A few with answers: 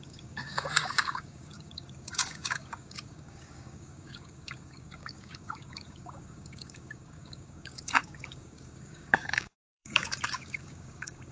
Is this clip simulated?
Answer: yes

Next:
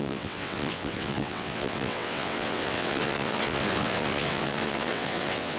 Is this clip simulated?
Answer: yes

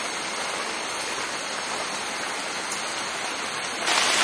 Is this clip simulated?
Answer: no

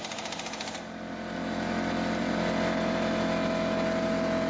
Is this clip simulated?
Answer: no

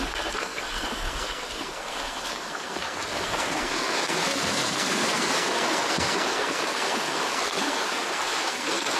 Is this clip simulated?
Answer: yes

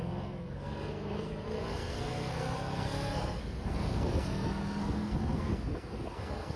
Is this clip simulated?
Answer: yes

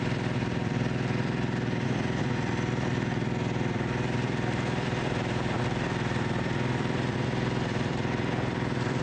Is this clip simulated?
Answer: yes